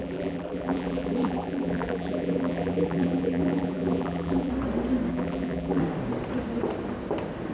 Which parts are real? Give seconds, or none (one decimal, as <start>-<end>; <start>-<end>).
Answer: 4.5-5.1; 5.8-7.5